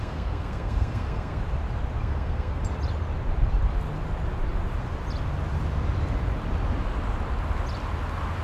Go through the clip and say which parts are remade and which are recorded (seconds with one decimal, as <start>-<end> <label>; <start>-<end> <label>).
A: 0.0-1.4 remade; 1.4-2.0 recorded; 2.0-2.6 remade; 2.6-8.4 recorded